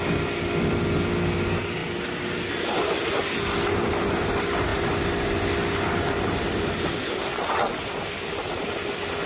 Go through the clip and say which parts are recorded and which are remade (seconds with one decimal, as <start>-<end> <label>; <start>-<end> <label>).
0.0-7.3 recorded; 7.3-7.8 remade; 7.8-9.3 recorded